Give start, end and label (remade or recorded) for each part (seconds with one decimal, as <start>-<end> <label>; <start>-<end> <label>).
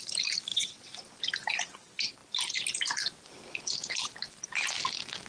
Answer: 0.0-0.5 recorded; 0.5-1.0 remade; 1.0-5.3 recorded